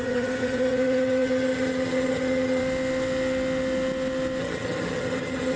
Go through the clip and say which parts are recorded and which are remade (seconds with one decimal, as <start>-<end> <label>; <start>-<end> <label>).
0.0-2.6 remade; 2.6-4.4 recorded; 4.4-5.6 remade